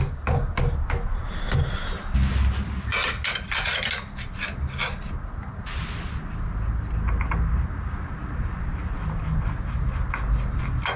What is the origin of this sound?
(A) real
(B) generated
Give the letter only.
A